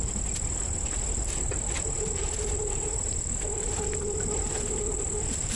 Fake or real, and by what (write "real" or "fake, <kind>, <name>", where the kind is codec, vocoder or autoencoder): real